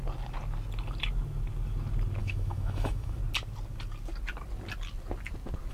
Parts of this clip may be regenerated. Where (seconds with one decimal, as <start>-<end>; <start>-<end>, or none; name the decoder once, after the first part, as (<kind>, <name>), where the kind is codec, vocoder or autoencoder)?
2.2-3.2 (autoencoder, DAC-VAE)